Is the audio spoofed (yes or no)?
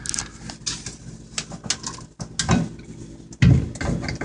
no